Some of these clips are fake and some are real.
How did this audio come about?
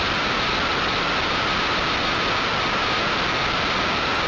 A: real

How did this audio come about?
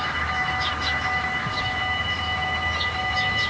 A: fake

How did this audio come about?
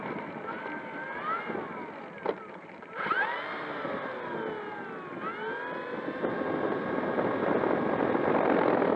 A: real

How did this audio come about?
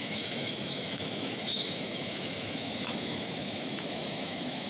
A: fake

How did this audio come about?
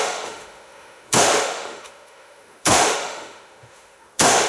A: fake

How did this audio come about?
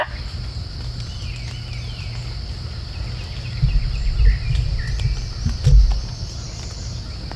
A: real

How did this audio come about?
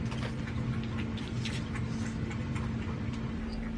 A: real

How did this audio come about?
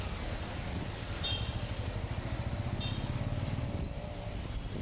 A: real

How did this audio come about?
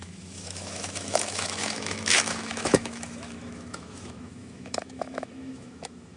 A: fake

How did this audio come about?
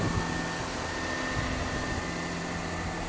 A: real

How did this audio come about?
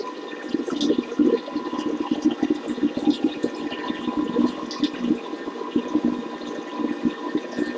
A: real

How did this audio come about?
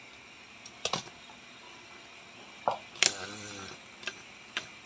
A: real